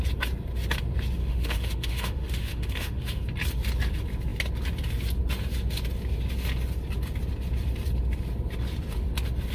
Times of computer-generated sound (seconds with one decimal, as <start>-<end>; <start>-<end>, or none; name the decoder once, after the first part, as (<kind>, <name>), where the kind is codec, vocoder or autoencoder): 1.2-3.2 (autoencoder, DAC-VAE)